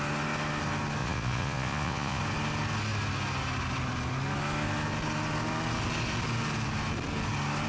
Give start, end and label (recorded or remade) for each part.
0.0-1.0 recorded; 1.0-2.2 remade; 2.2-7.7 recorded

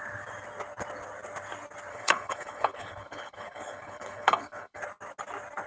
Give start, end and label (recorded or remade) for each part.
0.0-1.9 recorded; 1.9-4.8 remade; 4.8-5.7 recorded

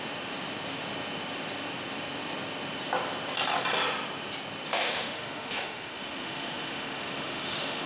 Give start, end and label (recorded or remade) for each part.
0.0-4.7 recorded; 4.7-7.9 remade

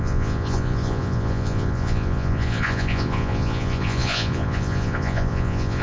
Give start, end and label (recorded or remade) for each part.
0.0-5.8 remade

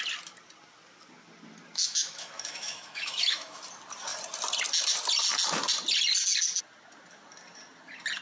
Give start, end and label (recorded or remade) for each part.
0.0-1.8 recorded; 1.8-3.6 remade; 3.6-8.2 recorded

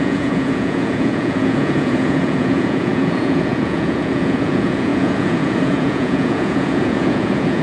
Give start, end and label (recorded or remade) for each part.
0.0-7.6 remade

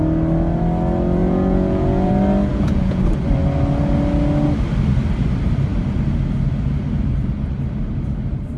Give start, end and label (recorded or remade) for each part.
0.0-1.2 recorded; 1.2-2.1 remade; 2.1-2.5 recorded; 2.5-3.0 remade; 3.0-8.6 recorded

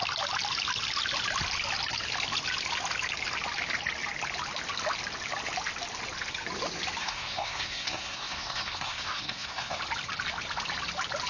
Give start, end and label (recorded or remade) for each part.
0.0-7.0 recorded; 7.0-9.8 remade; 9.8-11.3 recorded